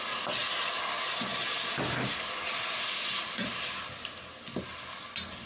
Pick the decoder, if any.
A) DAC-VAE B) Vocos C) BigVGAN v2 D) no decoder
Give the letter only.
D